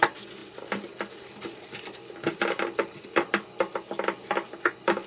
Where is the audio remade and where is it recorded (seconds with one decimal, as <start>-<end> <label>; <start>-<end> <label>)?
0.0-5.1 recorded